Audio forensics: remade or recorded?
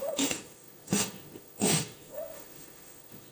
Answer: remade